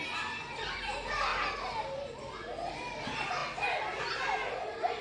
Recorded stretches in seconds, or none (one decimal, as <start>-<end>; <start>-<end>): 0.0-5.0